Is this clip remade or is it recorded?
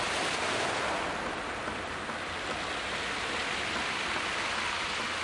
recorded